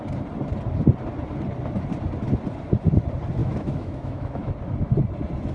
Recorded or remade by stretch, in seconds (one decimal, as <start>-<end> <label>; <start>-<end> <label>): 0.0-3.4 recorded; 3.4-4.5 remade; 4.5-5.5 recorded